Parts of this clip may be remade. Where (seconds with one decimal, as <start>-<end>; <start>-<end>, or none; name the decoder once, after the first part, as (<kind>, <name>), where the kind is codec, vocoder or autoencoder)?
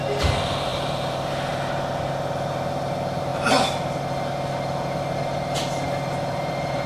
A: none